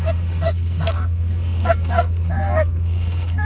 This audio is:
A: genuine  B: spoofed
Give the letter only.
B